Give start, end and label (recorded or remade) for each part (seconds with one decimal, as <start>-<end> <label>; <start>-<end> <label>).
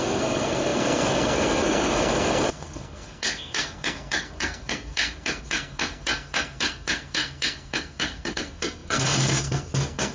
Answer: 0.0-10.1 remade